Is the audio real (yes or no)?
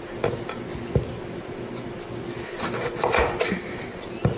yes